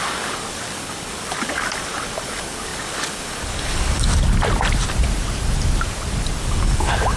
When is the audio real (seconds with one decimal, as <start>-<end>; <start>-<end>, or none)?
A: 4.1-6.4